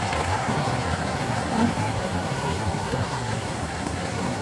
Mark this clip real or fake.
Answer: fake